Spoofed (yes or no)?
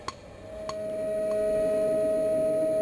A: no